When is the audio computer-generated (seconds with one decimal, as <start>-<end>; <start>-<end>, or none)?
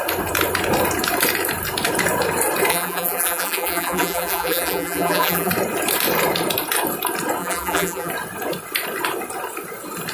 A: 2.7-5.5; 7.4-8.1